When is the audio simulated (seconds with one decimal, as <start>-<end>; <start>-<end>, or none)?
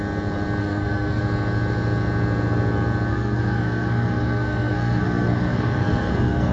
0.6-1.2; 3.1-6.5